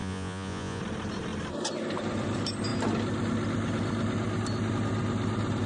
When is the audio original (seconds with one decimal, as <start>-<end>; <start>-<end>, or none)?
0.8-5.7